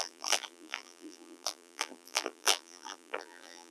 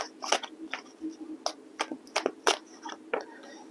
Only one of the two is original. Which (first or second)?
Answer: second